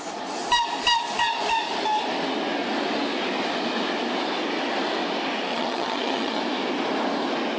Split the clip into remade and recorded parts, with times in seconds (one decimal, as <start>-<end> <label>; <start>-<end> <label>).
0.0-5.5 recorded; 5.5-6.4 remade; 6.4-7.6 recorded